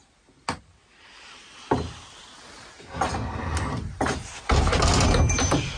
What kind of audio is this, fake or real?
real